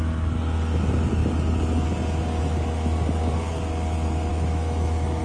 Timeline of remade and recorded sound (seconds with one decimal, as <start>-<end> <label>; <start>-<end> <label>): 0.0-4.3 recorded; 4.3-5.2 remade